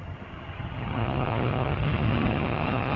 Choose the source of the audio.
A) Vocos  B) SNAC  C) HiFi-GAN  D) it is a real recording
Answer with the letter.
C